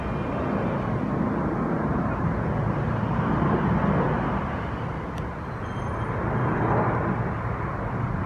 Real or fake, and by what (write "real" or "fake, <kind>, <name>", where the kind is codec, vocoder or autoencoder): real